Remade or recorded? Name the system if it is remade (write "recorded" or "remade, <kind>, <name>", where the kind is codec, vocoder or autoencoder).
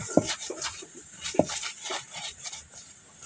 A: remade, vocoder, BigVGAN v2